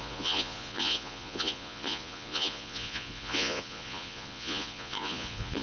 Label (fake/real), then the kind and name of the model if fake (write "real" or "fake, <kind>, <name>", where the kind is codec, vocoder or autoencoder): fake, vocoder, Vocos